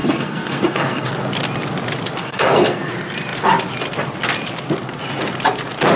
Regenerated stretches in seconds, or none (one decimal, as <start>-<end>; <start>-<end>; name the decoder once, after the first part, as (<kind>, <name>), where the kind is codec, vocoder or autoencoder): 0.0-1.1 (codec, SNAC); 2.2-2.9